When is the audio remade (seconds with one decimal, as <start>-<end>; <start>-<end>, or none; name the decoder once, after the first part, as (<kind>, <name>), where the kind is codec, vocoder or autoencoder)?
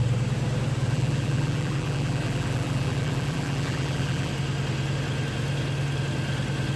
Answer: 0.8-4.3 (vocoder, BigVGAN v2)